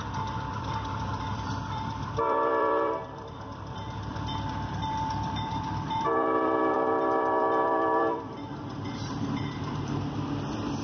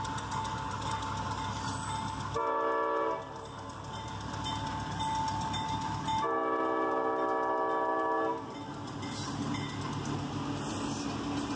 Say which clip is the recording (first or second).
second